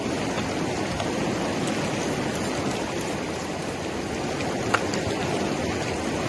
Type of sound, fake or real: real